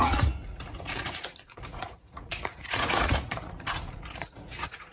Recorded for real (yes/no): no